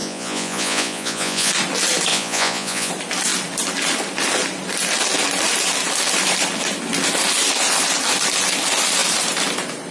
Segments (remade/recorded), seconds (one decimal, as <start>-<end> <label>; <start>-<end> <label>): 0.0-1.5 remade; 1.5-2.1 recorded; 2.1-2.9 remade; 2.9-9.9 recorded